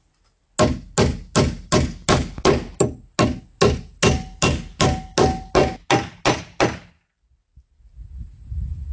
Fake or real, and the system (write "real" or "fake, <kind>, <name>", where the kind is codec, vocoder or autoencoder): real